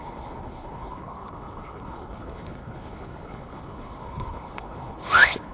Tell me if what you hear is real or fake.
fake